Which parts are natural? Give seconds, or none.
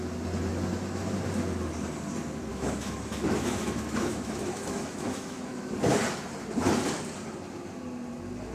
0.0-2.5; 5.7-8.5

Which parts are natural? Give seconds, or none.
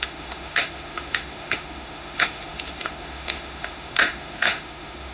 none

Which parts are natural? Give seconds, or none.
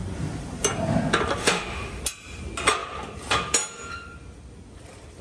0.0-1.4; 2.0-5.2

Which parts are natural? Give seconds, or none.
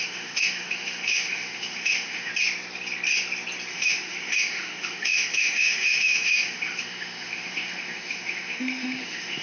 2.3-3.7